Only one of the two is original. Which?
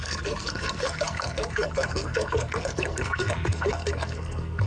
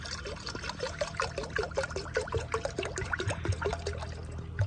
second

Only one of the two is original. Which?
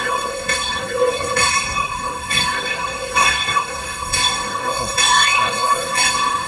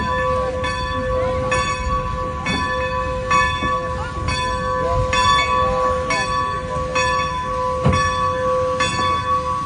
second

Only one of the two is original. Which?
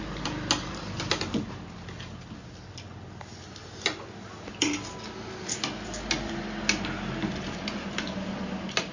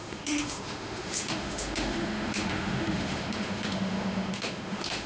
first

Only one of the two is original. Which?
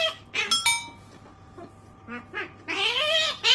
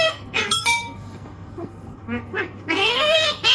first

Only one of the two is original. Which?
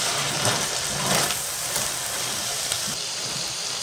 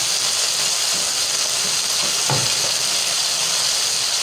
second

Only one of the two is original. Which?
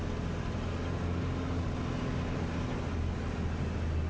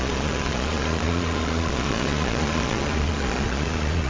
first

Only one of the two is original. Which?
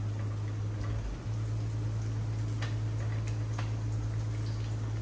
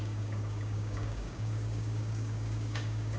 first